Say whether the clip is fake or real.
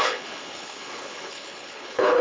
fake